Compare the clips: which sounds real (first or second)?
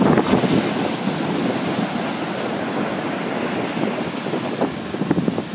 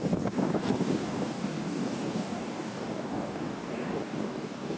first